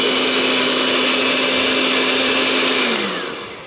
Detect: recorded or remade recorded